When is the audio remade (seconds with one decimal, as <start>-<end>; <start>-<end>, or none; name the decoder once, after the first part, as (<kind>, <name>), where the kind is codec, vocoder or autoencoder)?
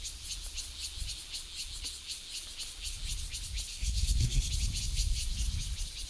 3.7-4.5 (codec, SNAC)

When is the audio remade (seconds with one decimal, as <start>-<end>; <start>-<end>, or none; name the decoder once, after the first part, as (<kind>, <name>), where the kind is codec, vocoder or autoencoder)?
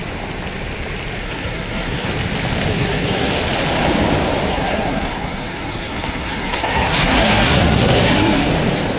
1.2-2.1 (codec, SNAC); 2.7-3.3; 4.5-8.5